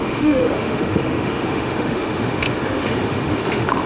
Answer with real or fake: fake